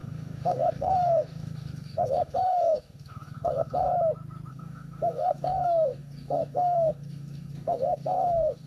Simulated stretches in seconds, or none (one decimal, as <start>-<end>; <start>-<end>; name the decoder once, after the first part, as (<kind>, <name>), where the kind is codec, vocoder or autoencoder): 0.0-3.9 (codec, DAC); 4.5-8.7